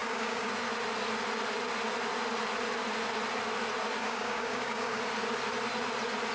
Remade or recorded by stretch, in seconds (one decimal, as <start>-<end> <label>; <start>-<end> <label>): 0.0-0.5 remade; 0.5-4.0 recorded; 4.0-5.0 remade; 5.0-6.3 recorded